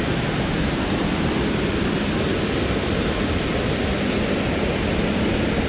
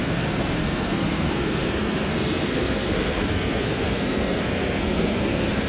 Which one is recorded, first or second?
first